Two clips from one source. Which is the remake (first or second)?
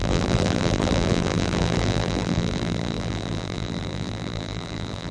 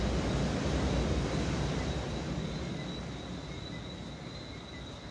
first